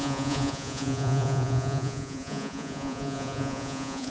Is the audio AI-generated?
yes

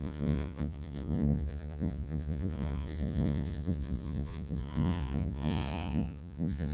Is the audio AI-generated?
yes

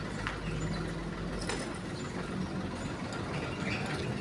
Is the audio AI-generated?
no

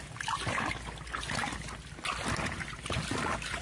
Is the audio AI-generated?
no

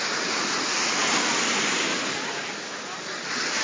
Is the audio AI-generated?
no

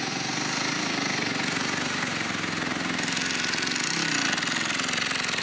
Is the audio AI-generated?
no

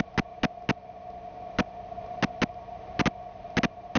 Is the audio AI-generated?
no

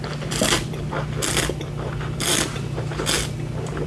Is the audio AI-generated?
yes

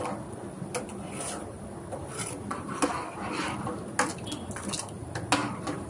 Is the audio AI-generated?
no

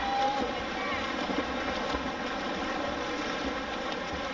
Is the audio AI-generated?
no